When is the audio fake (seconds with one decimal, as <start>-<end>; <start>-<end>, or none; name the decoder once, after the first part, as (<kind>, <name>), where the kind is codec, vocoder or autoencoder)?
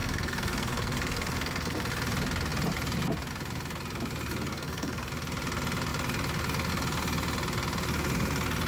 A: 0.0-1.9 (codec, SNAC); 4.5-5.1